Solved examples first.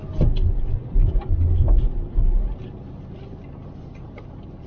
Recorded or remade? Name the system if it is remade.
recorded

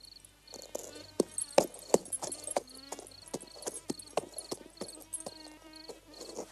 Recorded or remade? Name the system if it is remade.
recorded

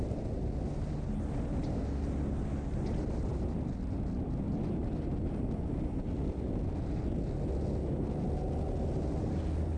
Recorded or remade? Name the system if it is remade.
recorded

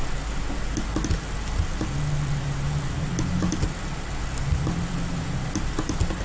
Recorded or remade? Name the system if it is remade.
recorded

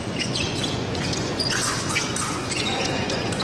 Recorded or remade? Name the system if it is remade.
remade, vocoder, Vocos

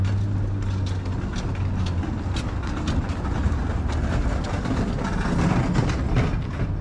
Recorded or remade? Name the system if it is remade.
recorded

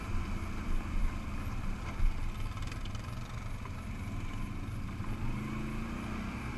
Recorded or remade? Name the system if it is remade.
recorded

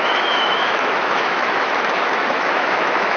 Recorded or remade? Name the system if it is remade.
remade, autoencoder, DAC-VAE